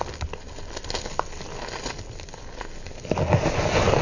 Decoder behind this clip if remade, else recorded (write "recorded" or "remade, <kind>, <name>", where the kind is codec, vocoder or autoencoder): recorded